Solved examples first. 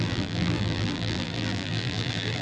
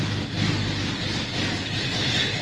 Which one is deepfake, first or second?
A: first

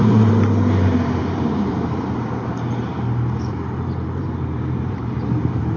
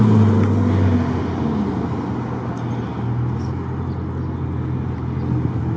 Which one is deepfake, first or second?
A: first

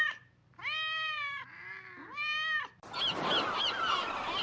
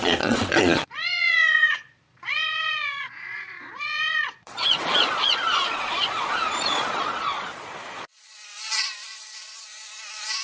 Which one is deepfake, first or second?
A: second